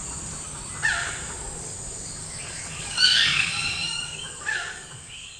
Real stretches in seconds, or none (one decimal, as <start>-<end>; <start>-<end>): 0.0-2.2